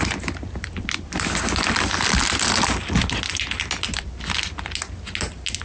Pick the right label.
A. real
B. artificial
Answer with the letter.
A